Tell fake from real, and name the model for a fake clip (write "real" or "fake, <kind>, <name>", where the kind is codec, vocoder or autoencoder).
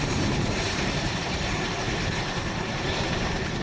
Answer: fake, vocoder, BigVGAN v2